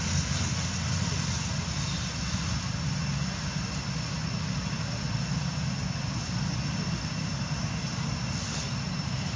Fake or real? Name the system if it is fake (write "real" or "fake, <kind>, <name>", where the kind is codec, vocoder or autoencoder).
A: real